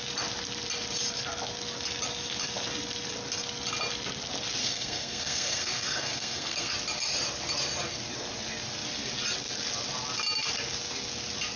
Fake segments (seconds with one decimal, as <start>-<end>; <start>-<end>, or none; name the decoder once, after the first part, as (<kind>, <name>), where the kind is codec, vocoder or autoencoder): 4.6-6.7 (codec, SNAC)